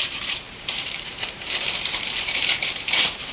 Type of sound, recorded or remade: remade